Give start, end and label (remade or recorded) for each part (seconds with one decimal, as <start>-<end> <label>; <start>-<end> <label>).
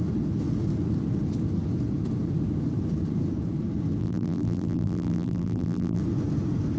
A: 0.0-4.0 recorded; 4.0-6.0 remade; 6.0-6.8 recorded